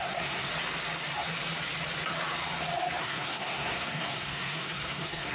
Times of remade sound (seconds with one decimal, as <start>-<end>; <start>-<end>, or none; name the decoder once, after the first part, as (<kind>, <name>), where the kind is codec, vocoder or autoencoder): 0.0-0.5 (codec, SNAC); 3.0-5.3